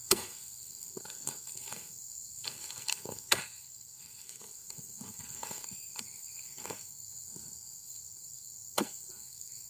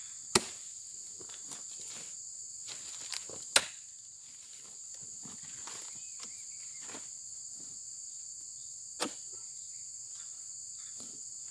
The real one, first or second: second